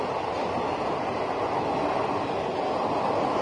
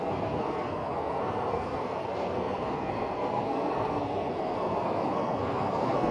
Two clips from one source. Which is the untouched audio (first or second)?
first